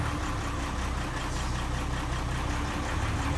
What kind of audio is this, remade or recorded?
recorded